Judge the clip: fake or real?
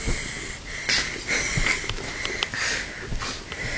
real